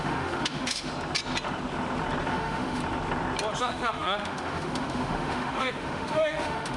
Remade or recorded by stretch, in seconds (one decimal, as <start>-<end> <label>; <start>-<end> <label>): 0.0-0.9 remade; 0.9-2.3 recorded; 2.3-2.8 remade; 2.8-3.6 recorded; 3.6-6.8 remade